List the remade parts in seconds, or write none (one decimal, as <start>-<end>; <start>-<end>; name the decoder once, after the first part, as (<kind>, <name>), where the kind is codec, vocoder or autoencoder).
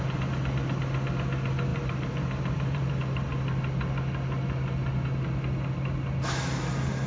1.7-2.9 (vocoder, BigVGAN v2)